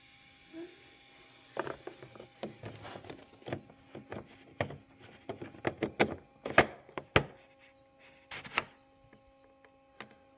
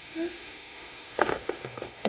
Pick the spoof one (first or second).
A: second